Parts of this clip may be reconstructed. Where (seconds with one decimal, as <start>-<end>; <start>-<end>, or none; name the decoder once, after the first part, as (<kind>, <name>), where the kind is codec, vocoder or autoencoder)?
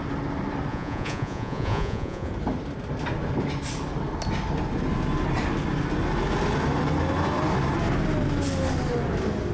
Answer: 0.7-2.3 (vocoder, Vocos)